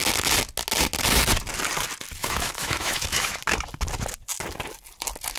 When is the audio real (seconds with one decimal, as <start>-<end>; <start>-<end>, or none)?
0.0-2.2; 3.4-5.4